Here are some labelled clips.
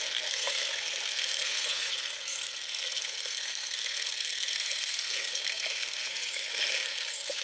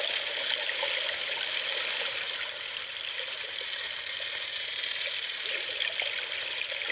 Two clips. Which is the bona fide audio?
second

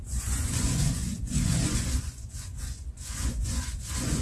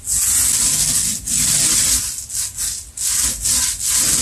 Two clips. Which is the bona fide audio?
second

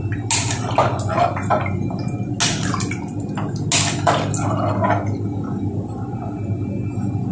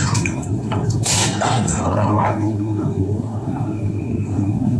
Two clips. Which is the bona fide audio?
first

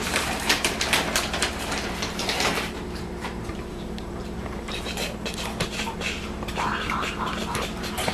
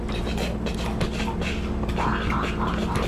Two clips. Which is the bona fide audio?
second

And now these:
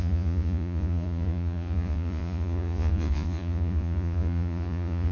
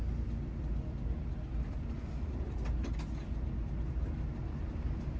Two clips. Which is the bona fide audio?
second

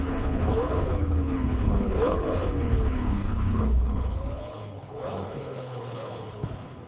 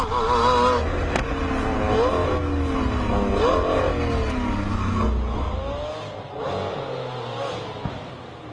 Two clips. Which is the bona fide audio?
second